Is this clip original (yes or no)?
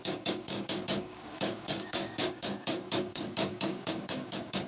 no